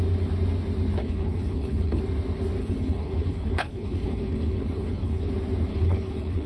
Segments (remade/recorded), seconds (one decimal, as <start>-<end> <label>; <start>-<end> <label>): 0.0-1.0 recorded; 1.0-2.0 remade; 2.0-2.6 recorded; 2.6-5.3 remade; 5.3-5.7 recorded; 5.7-6.5 remade